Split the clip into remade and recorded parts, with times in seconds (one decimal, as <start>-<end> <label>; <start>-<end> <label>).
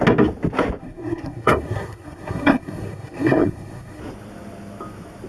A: 0.0-0.8 recorded; 0.8-4.0 remade; 4.0-5.3 recorded